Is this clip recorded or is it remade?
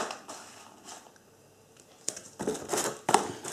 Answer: recorded